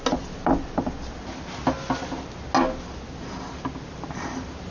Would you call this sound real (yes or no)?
yes